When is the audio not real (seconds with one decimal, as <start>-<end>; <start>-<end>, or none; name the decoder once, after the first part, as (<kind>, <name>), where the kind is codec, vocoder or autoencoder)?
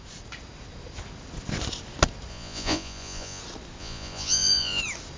2.3-3.4 (vocoder, Vocos); 3.8-4.8